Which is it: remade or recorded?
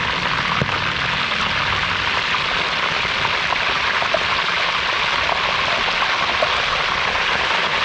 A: recorded